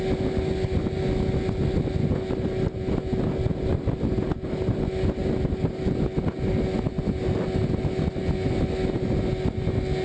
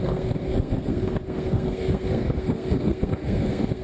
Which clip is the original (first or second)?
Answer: first